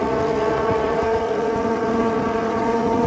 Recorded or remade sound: remade